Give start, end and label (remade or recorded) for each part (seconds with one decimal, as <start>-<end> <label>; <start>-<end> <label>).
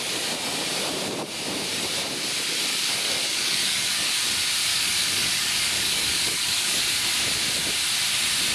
0.0-2.7 recorded; 2.7-4.1 remade; 4.1-4.7 recorded; 4.7-6.8 remade; 6.8-8.5 recorded